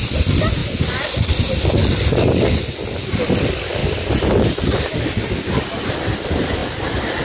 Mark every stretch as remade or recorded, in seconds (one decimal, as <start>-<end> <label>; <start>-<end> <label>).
0.0-3.8 recorded; 3.8-4.6 remade; 4.6-7.2 recorded